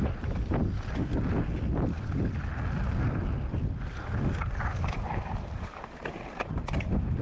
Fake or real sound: fake